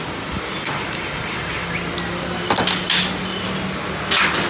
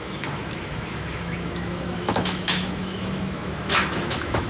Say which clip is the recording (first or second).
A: first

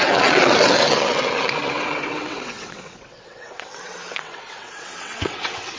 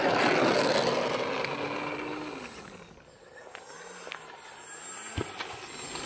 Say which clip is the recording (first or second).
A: second